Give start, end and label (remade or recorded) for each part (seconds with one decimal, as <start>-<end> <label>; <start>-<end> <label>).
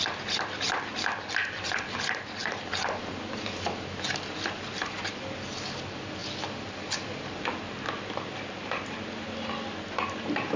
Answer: 0.0-10.6 recorded